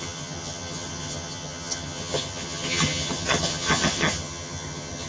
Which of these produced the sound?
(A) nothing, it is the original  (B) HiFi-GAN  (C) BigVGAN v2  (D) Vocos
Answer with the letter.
B